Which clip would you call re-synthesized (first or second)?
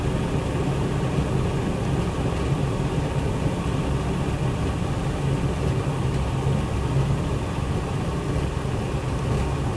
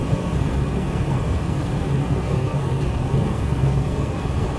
second